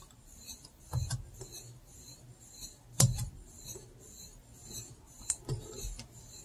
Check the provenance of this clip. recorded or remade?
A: recorded